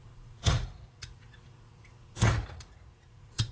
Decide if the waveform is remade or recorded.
remade